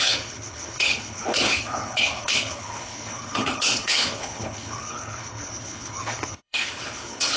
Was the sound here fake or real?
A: fake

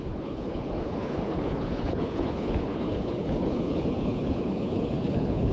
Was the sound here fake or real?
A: fake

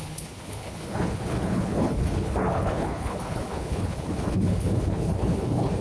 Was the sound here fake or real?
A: fake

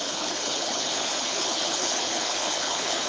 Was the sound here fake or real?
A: fake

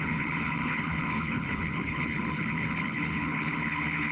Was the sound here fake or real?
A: fake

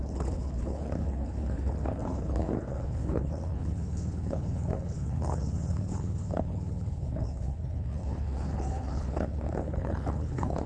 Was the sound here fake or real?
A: fake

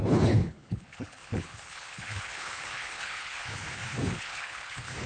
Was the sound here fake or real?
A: fake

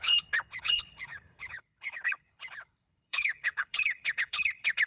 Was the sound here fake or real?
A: fake